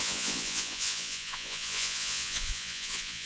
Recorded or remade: remade